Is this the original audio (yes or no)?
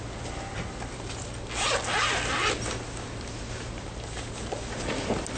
yes